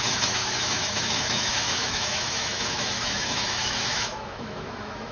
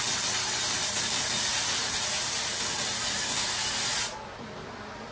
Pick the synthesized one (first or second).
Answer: first